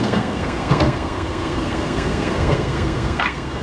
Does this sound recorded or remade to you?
remade